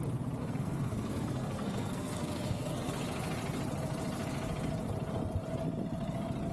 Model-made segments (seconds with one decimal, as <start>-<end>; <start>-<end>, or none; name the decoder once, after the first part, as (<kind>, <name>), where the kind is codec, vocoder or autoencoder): 0.4-2.9 (codec, SNAC)